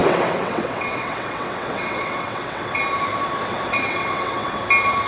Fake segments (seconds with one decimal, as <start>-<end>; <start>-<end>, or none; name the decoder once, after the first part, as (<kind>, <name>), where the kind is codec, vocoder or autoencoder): 0.0-2.8 (vocoder, WaveNeXt); 3.5-4.6